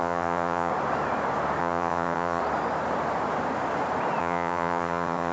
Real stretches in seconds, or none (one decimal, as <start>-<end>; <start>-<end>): 0.7-1.6; 2.4-4.2

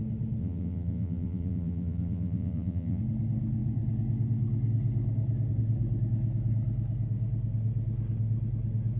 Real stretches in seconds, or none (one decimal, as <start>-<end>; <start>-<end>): 0.0-0.4; 3.0-9.0